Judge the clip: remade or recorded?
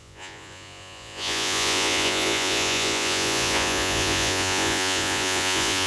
remade